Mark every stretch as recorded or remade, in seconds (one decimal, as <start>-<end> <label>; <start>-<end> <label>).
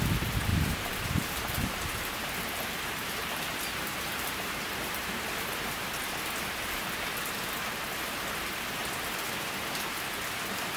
0.0-0.5 recorded; 0.5-5.8 remade; 5.8-10.8 recorded